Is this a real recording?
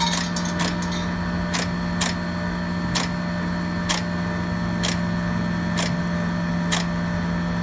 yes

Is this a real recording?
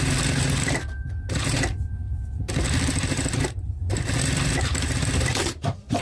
no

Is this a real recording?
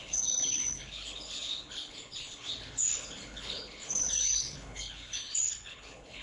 no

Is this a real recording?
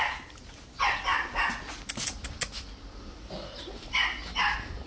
yes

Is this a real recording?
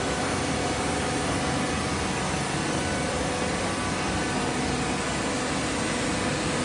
yes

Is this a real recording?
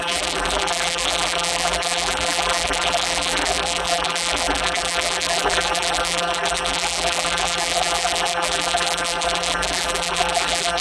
no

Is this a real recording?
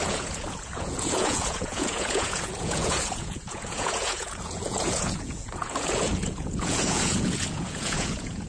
no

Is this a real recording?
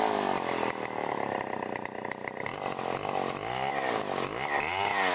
yes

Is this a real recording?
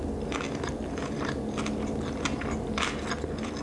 yes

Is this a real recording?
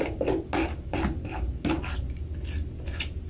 yes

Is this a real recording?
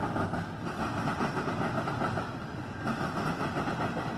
yes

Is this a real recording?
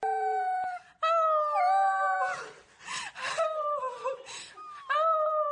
yes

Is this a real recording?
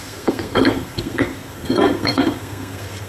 no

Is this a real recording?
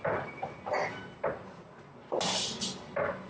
yes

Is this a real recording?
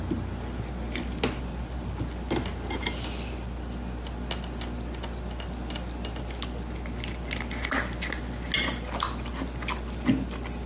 yes